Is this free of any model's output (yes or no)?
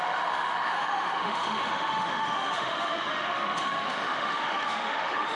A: no